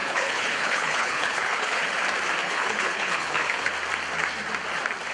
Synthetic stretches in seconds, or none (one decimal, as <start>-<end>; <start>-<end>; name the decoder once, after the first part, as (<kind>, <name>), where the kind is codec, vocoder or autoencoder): 0.0-1.8 (codec, HILCodec); 2.4-3.7